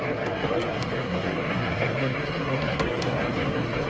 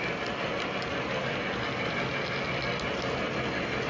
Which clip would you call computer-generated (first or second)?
first